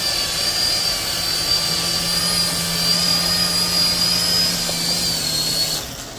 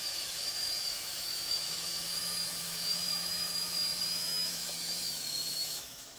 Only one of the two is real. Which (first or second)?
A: first